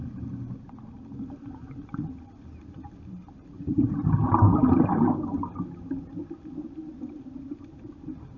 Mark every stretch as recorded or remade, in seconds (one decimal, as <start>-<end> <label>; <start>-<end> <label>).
0.0-8.4 recorded